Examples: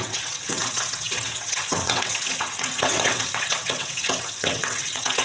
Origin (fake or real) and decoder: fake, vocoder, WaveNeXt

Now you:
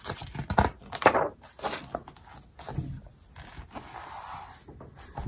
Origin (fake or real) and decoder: real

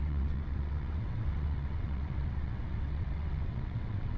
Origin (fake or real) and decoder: fake, vocoder, WaveNeXt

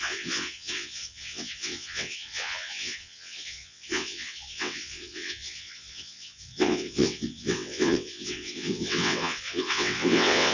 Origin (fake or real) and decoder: fake, vocoder, WaveNeXt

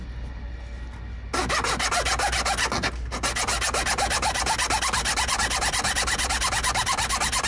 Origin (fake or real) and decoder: real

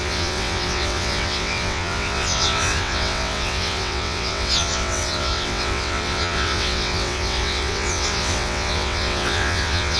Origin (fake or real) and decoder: fake, vocoder, WaveNeXt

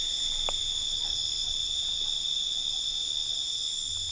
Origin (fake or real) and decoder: real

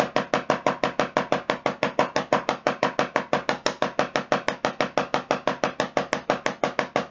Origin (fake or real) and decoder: real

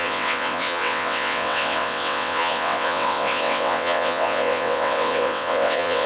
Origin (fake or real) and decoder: fake, vocoder, WaveNeXt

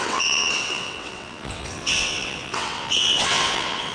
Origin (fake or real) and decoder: fake, vocoder, WaveNeXt